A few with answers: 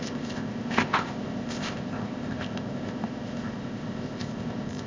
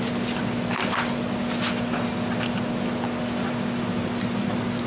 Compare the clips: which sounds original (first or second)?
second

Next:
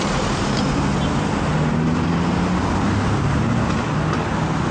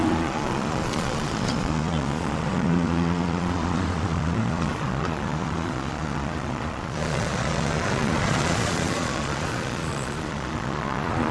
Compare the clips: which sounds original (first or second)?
first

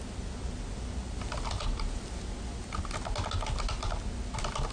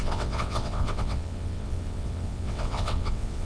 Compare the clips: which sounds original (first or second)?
first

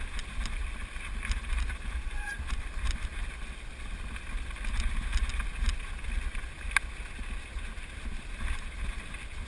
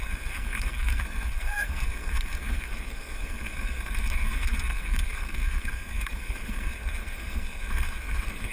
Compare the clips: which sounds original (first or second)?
first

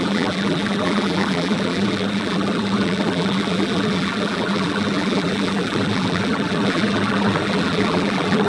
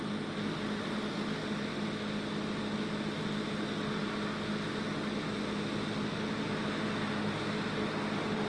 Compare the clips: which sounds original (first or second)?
second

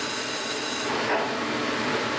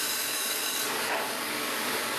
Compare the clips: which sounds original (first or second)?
first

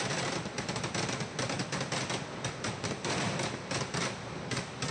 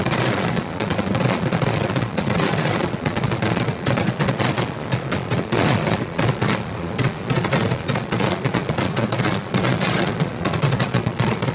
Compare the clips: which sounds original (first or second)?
first